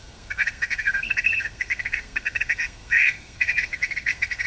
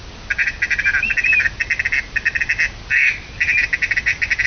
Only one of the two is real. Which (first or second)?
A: second